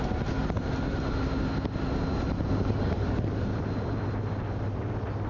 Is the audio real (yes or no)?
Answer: yes